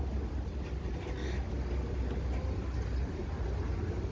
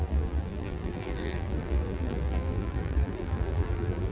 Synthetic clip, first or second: second